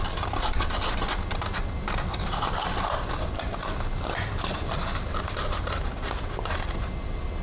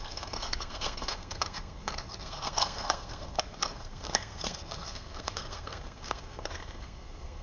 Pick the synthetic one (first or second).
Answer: second